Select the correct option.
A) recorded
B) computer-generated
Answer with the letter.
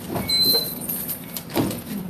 A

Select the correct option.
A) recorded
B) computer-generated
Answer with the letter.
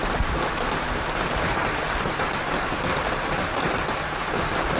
A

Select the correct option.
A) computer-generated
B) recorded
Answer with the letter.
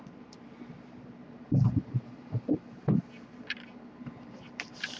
A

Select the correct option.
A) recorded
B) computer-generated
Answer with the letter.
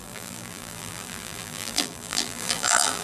B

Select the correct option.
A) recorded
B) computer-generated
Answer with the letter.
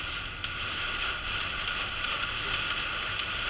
A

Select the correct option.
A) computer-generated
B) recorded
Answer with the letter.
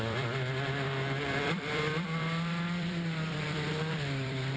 A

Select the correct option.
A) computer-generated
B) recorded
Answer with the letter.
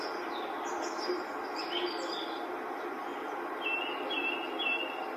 B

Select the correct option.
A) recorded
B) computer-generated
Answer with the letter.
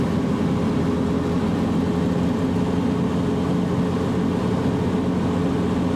A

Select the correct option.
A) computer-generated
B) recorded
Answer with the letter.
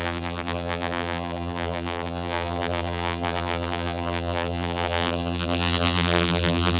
A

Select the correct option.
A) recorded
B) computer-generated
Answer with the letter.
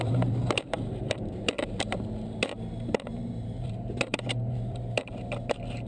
B